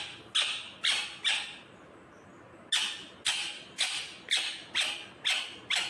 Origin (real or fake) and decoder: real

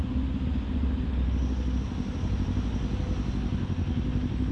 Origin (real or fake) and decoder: real